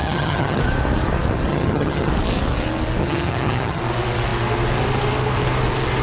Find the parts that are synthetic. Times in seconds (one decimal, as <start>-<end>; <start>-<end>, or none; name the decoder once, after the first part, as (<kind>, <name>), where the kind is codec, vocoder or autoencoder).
0.0-0.6 (vocoder, HiFi-GAN); 1.5-2.1; 3.0-3.8